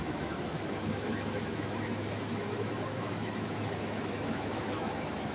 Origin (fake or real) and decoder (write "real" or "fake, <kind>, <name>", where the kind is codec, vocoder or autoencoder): fake, autoencoder, DAC-VAE